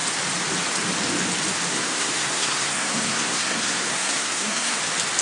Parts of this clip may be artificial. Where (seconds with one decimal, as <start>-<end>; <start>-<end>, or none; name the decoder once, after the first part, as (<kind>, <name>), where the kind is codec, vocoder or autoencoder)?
1.7-4.8 (codec, SNAC)